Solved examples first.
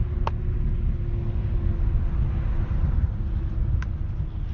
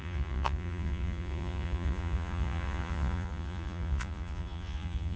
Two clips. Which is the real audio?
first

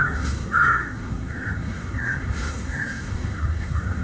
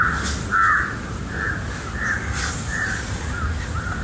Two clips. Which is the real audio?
second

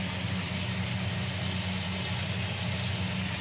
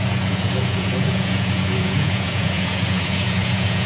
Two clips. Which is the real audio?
first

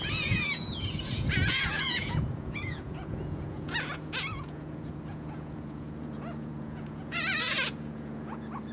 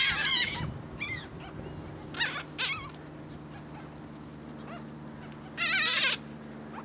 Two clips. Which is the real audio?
second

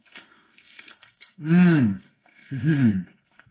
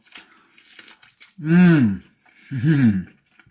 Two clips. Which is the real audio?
second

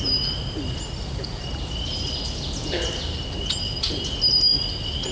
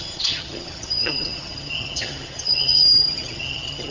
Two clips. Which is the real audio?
first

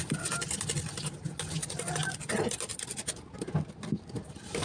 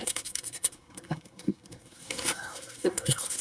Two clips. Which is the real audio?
first